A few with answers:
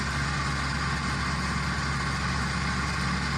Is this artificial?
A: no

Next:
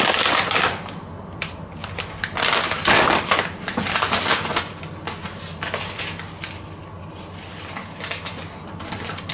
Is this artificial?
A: no